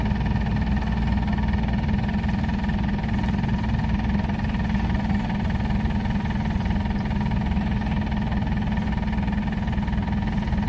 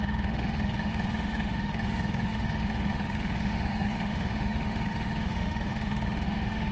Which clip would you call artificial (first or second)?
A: second